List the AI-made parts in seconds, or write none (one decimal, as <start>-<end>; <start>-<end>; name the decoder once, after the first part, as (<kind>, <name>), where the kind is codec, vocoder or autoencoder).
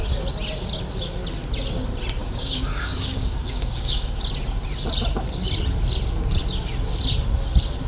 2.2-4.2 (codec, DAC)